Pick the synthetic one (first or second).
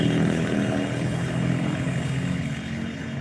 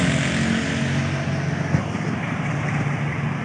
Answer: first